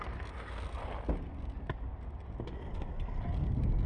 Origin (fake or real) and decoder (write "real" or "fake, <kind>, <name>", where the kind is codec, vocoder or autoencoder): real